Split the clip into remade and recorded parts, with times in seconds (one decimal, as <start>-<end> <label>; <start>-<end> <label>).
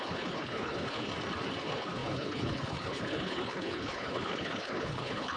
0.0-1.1 remade; 1.1-1.6 recorded; 1.6-5.4 remade